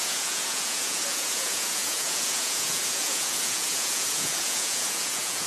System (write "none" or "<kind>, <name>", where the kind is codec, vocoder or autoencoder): vocoder, Vocos